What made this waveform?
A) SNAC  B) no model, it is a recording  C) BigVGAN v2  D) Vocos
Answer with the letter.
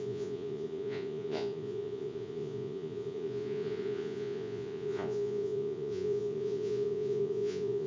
D